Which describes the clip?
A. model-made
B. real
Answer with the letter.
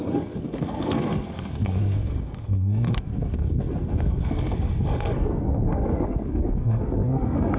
A